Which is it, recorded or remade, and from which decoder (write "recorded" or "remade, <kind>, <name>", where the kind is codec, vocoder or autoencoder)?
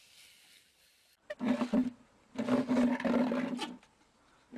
recorded